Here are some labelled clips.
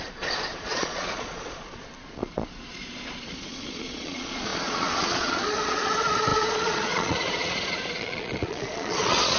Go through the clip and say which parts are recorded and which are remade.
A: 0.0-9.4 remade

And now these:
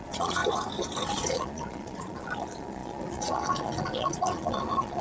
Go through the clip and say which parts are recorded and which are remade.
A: 0.0-0.4 remade; 0.4-1.1 recorded; 1.1-5.0 remade